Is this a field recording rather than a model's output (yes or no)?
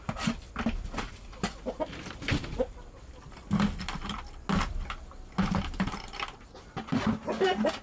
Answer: yes